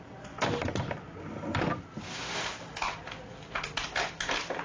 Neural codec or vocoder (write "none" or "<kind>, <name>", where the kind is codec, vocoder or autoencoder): none